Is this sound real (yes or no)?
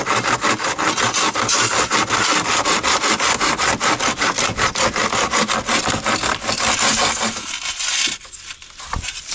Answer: yes